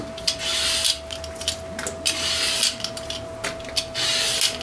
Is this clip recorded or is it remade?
recorded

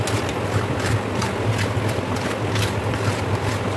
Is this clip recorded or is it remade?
remade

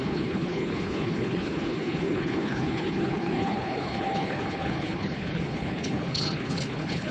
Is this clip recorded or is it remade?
remade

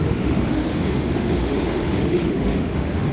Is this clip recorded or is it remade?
remade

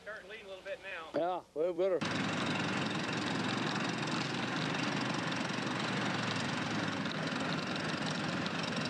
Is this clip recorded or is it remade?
remade